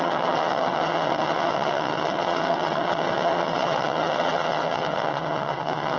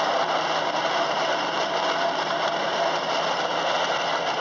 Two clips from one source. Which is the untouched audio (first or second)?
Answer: second